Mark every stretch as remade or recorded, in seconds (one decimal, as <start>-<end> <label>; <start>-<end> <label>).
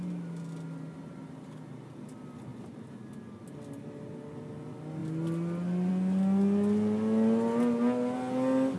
0.0-8.8 recorded